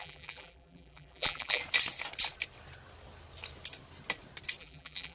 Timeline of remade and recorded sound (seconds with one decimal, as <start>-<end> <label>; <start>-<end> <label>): 0.0-1.6 remade; 1.6-4.6 recorded; 4.6-5.1 remade